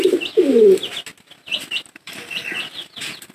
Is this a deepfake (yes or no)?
no